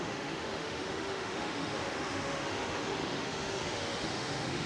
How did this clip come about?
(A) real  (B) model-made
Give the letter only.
B